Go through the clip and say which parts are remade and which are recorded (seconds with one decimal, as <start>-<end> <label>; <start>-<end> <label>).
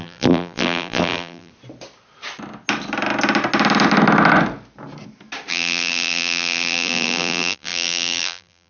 0.0-1.5 remade; 1.5-5.5 recorded; 5.5-8.7 remade